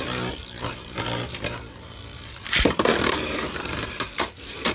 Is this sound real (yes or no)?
no